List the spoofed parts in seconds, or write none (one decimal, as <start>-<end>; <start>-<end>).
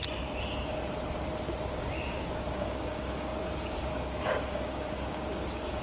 1.7-5.8